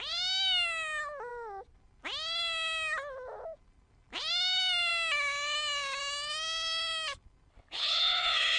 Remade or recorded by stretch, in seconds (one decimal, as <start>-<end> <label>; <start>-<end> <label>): 0.0-7.5 recorded; 7.5-8.6 remade